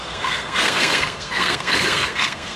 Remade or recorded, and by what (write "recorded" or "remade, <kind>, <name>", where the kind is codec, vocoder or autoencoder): remade, codec, SNAC